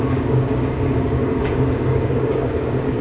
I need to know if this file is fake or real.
fake